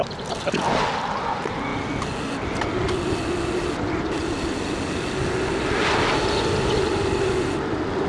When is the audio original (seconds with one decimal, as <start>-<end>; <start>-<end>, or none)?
0.0-8.1